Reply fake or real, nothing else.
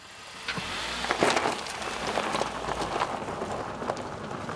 real